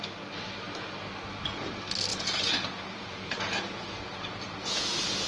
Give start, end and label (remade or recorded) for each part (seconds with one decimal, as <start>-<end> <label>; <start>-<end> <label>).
0.0-2.1 recorded; 2.1-5.3 remade